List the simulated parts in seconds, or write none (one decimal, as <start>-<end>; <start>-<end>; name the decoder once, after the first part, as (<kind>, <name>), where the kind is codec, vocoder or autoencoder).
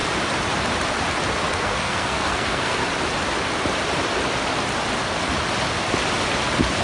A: 1.5-2.8 (codec, SNAC)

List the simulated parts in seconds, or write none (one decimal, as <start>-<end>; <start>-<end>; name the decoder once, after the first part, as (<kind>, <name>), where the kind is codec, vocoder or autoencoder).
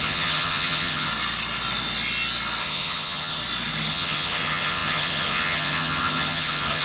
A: 0.0-1.1 (vocoder, HiFi-GAN); 2.6-3.4; 3.9-6.8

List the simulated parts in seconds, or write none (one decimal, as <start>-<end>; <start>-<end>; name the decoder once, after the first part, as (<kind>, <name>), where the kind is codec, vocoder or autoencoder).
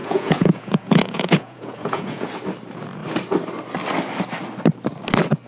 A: 0.0-2.3 (vocoder, Vocos)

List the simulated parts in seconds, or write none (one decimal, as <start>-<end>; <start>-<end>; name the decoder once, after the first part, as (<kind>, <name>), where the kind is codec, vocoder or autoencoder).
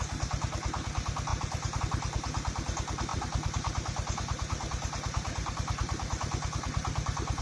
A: 1.3-1.8 (vocoder, BigVGAN v2); 3.1-7.4